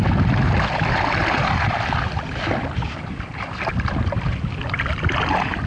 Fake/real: real